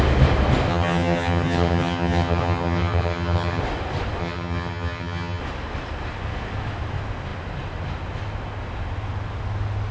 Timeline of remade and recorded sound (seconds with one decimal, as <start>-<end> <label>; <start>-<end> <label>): 0.0-0.7 recorded; 0.7-3.6 remade; 3.6-4.2 recorded; 4.2-5.4 remade; 5.4-9.9 recorded